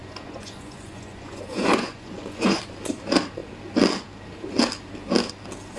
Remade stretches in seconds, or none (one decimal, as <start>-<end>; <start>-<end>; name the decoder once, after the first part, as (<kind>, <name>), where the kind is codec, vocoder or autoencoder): 0.0-2.6 (vocoder, Vocos)